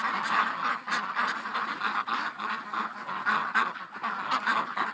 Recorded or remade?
recorded